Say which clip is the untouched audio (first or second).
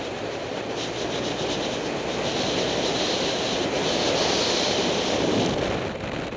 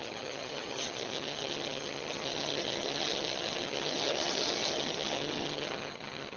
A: first